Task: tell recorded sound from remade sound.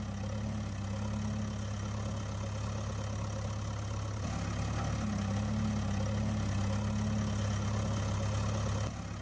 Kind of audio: recorded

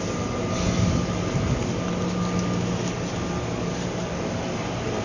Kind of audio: recorded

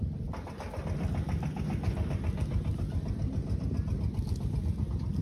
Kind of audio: recorded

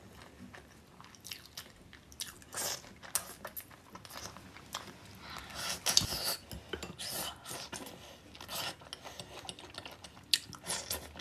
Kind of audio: recorded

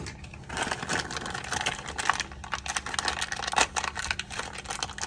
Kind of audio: recorded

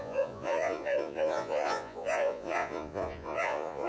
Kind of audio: remade